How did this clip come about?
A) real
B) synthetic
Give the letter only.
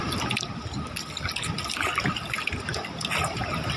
A